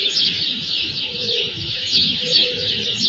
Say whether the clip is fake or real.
fake